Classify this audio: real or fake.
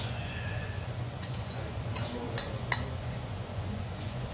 fake